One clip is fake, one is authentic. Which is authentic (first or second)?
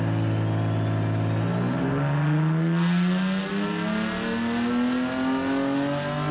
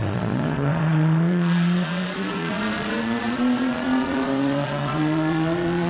first